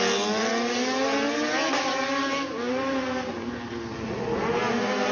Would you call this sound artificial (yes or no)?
no